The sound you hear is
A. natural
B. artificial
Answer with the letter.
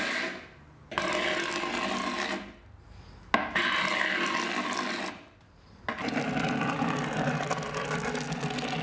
A